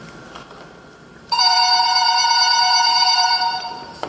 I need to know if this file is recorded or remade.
remade